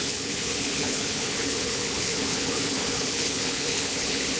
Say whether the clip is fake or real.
fake